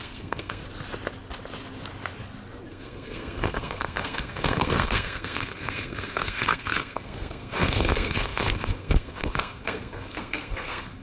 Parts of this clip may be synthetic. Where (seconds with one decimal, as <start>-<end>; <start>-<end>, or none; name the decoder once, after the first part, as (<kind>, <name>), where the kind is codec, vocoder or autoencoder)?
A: 0.0-0.6 (codec, SNAC); 2.7-11.0

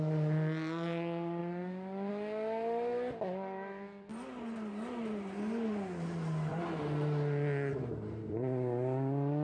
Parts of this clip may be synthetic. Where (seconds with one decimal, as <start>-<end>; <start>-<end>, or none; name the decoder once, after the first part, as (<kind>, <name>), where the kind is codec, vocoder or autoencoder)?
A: none

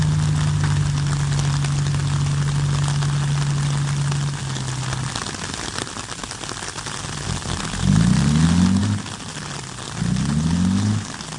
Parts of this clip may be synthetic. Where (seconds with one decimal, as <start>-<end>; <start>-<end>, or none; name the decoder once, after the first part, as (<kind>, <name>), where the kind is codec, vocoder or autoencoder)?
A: none

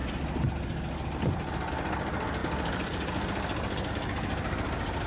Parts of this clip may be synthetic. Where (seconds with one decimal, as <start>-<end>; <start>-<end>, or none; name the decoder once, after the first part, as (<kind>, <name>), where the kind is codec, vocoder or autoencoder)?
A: none